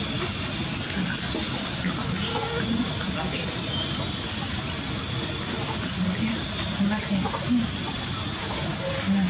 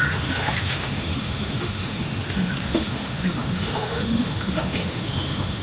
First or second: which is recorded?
first